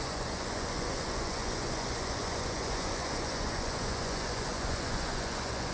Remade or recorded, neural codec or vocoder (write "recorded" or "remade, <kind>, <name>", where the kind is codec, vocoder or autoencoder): remade, vocoder, Vocos